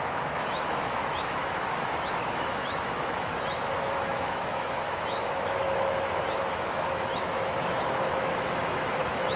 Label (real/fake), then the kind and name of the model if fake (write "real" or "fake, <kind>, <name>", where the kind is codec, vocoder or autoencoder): fake, autoencoder, DAC-VAE